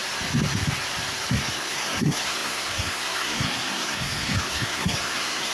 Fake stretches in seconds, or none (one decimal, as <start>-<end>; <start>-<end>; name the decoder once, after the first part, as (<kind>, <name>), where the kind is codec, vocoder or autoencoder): 1.3-5.5 (codec, SNAC)